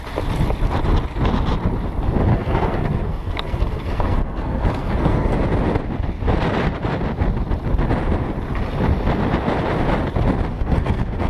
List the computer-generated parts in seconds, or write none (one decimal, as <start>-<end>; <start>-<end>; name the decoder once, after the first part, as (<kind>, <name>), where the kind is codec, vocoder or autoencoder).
2.3-5.4 (codec, SNAC); 10.5-11.3